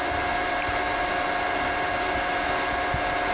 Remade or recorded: recorded